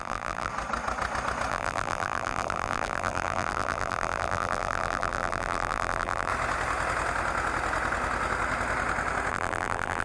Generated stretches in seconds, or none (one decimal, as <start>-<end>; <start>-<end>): 0.0-0.5; 1.5-6.3; 9.3-10.0